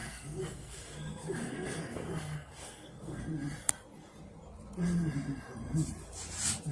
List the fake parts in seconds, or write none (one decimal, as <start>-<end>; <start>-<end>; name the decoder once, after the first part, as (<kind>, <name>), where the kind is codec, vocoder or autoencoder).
0.0-3.2 (codec, SNAC)